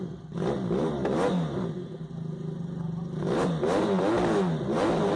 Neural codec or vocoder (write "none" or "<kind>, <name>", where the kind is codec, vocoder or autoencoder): none